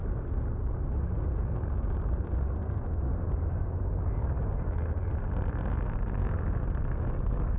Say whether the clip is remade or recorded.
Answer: recorded